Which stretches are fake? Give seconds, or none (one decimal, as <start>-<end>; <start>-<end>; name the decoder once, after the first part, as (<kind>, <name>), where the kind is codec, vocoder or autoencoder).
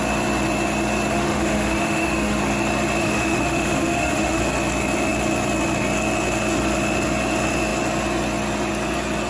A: 1.1-2.4 (autoencoder, DAC-VAE); 3.0-4.4